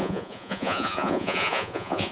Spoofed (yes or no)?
yes